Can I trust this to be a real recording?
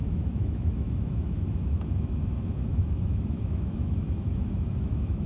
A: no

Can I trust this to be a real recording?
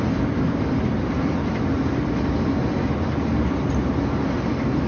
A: yes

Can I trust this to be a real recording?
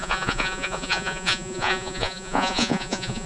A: no